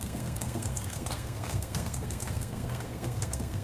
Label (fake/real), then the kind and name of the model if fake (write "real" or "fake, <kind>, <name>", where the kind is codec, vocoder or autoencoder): fake, codec, SNAC